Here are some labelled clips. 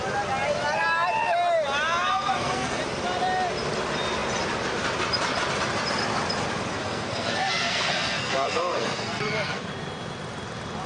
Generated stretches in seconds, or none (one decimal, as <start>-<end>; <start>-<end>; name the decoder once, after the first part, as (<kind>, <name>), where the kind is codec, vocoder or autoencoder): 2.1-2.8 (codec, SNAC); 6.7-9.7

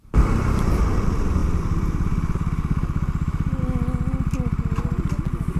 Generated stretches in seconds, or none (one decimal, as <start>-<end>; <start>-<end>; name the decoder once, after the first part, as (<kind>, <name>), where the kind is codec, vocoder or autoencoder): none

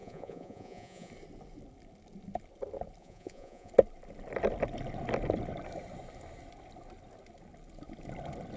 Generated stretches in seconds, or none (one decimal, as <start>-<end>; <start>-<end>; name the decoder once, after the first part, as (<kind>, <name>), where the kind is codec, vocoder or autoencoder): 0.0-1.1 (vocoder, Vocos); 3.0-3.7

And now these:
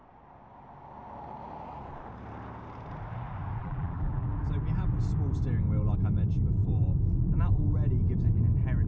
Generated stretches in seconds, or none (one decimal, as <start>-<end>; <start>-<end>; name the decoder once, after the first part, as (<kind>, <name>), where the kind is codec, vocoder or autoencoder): 3.6-4.3 (vocoder, BigVGAN v2)